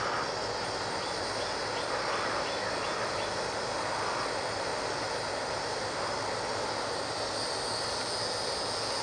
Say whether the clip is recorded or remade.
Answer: recorded